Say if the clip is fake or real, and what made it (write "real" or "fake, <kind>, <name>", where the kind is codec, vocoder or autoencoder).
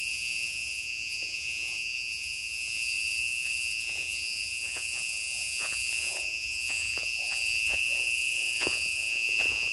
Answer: fake, vocoder, Vocos